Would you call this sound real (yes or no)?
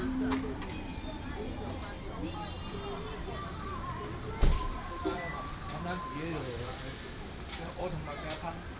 yes